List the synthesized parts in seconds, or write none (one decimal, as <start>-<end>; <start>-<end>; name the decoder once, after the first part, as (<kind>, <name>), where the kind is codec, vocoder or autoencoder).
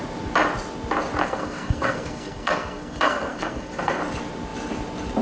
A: 1.2-4.0 (codec, SNAC)